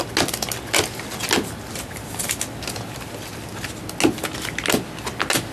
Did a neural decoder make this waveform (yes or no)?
no